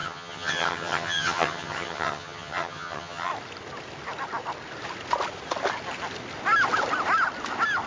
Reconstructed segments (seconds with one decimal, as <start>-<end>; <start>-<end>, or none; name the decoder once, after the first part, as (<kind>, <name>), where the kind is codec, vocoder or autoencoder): 0.0-3.3 (vocoder, HiFi-GAN)